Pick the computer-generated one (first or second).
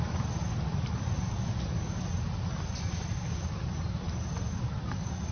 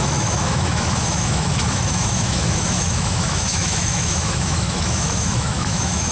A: second